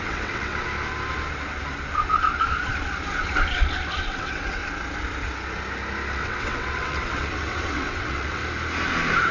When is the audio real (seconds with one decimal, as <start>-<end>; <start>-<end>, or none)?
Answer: 0.5-4.0; 4.6-6.1; 8.4-9.3